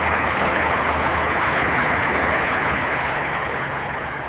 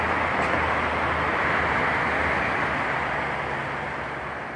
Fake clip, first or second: first